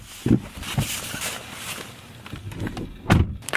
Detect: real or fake real